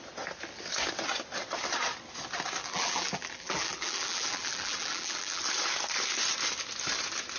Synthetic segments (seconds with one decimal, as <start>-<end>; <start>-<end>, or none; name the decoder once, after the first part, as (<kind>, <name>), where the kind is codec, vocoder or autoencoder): 2.6-5.4 (vocoder, BigVGAN v2)